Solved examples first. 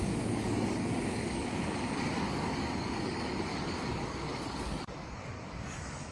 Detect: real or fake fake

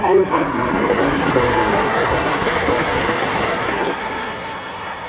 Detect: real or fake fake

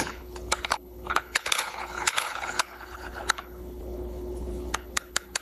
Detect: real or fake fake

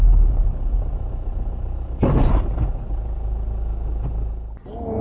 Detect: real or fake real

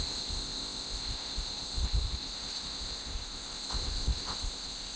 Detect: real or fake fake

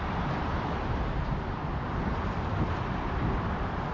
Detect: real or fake fake